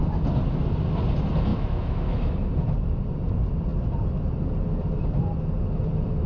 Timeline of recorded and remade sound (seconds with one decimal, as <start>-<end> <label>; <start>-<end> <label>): 0.0-1.5 recorded; 1.5-2.3 remade; 2.3-6.3 recorded

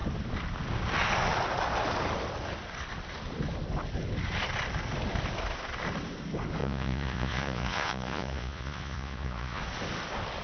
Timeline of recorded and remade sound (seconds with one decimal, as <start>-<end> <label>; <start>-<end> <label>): 0.0-6.6 recorded; 6.6-9.6 remade; 9.6-10.4 recorded

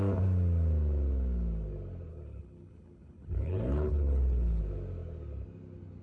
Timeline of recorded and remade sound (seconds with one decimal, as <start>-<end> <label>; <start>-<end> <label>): 0.0-2.1 recorded; 2.1-4.6 remade; 4.6-6.0 recorded

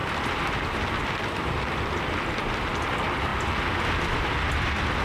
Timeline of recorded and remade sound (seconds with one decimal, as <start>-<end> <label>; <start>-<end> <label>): 0.0-3.3 remade; 3.3-3.9 recorded; 3.9-5.0 remade

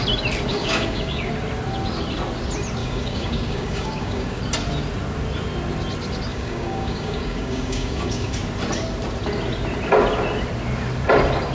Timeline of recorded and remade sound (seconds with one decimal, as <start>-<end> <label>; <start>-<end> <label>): 0.0-0.5 recorded; 0.5-1.3 remade; 1.3-2.8 recorded; 2.8-4.4 remade; 4.4-6.3 recorded; 6.3-8.3 remade; 8.3-11.5 recorded

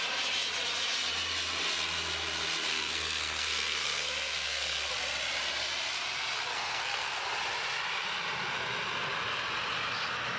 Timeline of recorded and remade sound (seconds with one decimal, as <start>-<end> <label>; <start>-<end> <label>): 0.0-2.7 recorded; 2.7-4.9 remade; 4.9-6.5 recorded; 6.5-7.2 remade; 7.2-10.4 recorded

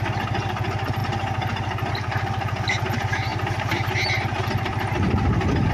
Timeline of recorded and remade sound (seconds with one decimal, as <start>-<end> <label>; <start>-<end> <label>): 0.0-5.7 recorded

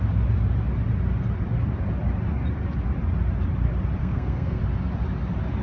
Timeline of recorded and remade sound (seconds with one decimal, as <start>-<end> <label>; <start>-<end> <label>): 0.0-4.0 recorded; 4.0-4.6 remade; 4.6-5.6 recorded